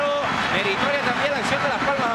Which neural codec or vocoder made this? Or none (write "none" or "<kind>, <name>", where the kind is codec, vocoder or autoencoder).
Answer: none